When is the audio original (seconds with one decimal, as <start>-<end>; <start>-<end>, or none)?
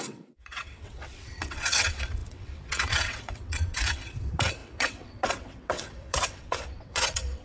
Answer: none